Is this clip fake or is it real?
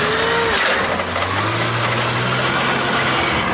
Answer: real